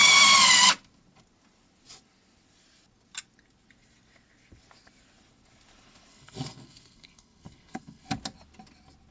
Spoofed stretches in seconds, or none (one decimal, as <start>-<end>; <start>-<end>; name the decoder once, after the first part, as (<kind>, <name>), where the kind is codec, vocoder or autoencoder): 6.1-8.1 (codec, SNAC)